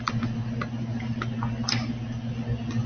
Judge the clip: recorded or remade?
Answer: recorded